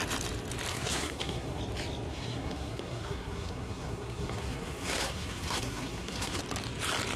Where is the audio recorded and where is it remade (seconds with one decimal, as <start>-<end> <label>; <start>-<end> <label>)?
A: 0.0-0.7 recorded; 0.7-1.6 remade; 1.6-2.1 recorded; 2.1-6.4 remade; 6.4-7.2 recorded